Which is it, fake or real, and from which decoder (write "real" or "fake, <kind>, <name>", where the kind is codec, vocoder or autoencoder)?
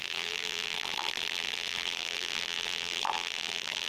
fake, vocoder, BigVGAN v2